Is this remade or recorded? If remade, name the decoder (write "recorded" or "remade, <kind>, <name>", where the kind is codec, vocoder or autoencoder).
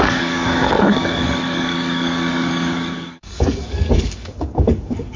remade, codec, DAC